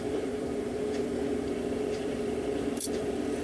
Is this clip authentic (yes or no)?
no